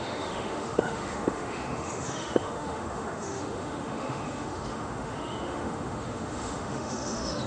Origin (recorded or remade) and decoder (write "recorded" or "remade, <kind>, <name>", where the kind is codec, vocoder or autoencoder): remade, autoencoder, DAC-VAE